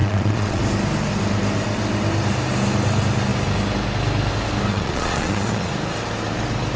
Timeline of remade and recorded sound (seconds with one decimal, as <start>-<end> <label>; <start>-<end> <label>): 0.0-0.6 remade; 0.6-4.7 recorded; 4.7-5.7 remade; 5.7-6.8 recorded